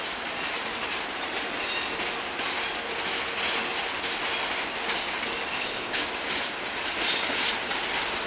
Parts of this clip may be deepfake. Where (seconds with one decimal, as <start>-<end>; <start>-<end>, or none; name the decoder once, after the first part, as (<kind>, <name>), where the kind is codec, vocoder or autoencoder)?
5.5-6.0 (codec, ZipCodec)